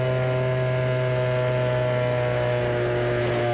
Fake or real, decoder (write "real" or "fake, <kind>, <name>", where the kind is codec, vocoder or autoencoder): real